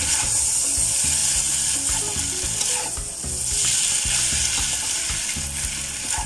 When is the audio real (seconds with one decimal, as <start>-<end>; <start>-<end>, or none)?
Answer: 0.0-6.3